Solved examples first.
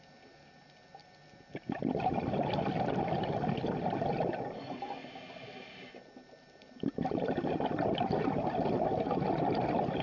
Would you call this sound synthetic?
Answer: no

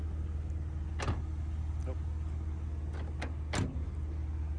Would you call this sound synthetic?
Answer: no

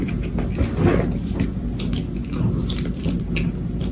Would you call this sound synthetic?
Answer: no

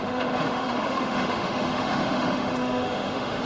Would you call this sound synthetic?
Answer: yes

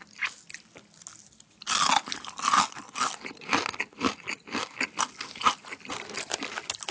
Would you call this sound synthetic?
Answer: no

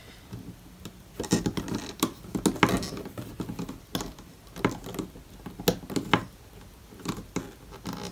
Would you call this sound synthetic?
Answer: no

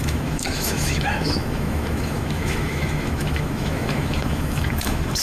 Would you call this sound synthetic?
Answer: yes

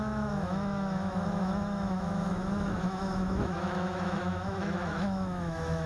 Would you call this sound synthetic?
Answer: yes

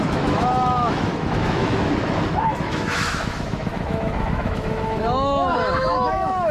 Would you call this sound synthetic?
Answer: yes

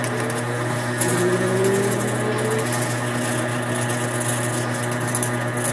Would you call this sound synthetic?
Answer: no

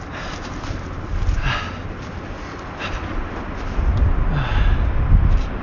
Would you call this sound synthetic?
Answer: no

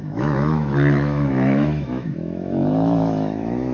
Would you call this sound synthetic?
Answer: yes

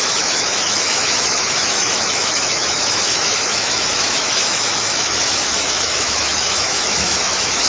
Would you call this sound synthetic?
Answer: yes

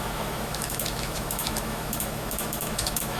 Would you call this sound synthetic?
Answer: yes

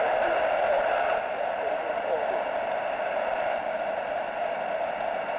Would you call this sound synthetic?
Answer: no